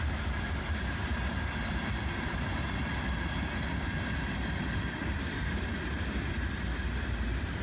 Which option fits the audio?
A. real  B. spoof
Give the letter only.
A